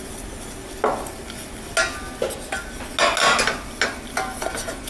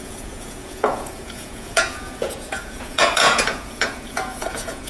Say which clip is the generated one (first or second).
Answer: second